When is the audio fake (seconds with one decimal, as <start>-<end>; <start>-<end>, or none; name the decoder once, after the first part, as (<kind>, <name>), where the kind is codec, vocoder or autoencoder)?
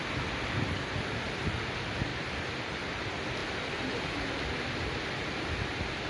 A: 2.1-3.0 (vocoder, BigVGAN v2)